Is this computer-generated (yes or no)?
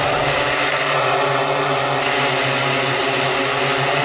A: no